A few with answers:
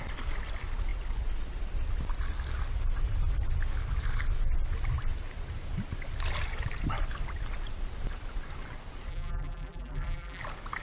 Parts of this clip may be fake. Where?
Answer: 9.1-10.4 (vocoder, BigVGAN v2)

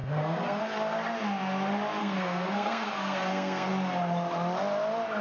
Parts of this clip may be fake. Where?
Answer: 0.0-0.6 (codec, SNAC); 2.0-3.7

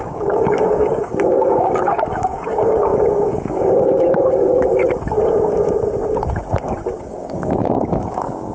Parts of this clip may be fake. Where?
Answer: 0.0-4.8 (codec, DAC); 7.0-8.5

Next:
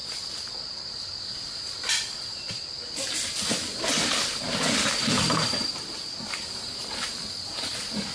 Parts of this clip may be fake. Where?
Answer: none

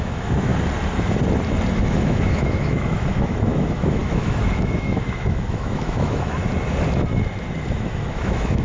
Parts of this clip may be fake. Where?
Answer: 0.0-0.5 (autoencoder, DAC-VAE); 1.7-6.4; 7.7-8.6

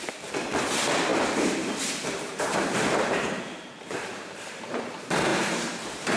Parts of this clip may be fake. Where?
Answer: 1.1-4.8 (vocoder, BigVGAN v2); 5.3-6.2